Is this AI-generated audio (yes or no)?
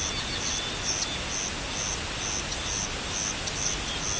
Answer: no